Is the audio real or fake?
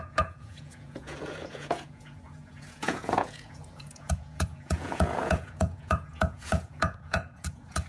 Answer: fake